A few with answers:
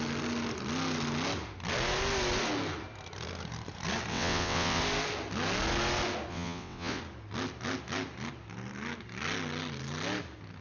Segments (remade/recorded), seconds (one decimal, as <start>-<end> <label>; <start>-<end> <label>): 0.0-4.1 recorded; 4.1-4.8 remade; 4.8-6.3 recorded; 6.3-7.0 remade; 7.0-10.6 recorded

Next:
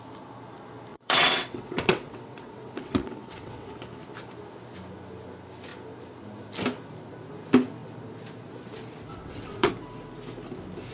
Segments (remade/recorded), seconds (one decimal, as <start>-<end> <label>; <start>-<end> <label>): 0.0-0.9 recorded; 0.9-3.7 remade; 3.7-9.1 recorded; 9.1-9.7 remade; 9.7-10.9 recorded

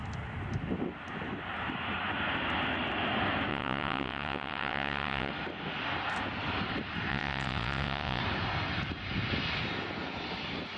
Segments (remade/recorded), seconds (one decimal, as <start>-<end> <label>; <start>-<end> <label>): 0.0-3.5 recorded; 3.5-5.3 remade; 5.3-7.1 recorded; 7.1-8.2 remade; 8.2-10.8 recorded

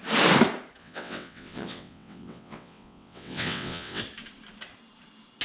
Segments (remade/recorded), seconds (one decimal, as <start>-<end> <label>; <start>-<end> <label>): 0.0-0.8 recorded; 0.8-4.0 remade; 4.0-5.4 recorded

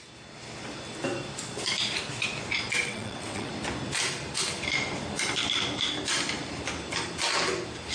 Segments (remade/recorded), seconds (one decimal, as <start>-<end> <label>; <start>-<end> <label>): 0.0-2.8 recorded; 2.8-3.5 remade; 3.5-7.9 recorded

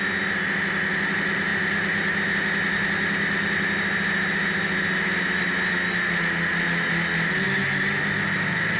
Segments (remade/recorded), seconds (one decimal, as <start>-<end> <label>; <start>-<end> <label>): 0.0-8.8 recorded

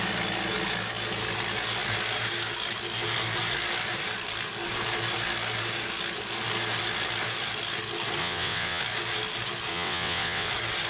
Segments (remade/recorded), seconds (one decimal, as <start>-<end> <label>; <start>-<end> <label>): 0.0-8.2 recorded; 8.2-8.8 remade; 8.8-9.7 recorded; 9.7-10.5 remade; 10.5-10.9 recorded

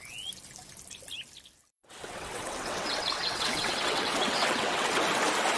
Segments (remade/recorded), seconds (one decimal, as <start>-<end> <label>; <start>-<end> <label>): 0.0-1.7 recorded; 1.7-5.0 remade; 5.0-5.6 recorded